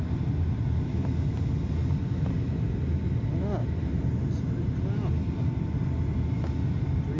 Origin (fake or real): real